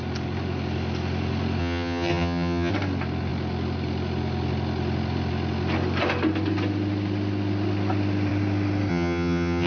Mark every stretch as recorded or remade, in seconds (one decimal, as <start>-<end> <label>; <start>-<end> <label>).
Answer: 0.0-1.6 recorded; 1.6-2.7 remade; 2.7-8.9 recorded; 8.9-9.7 remade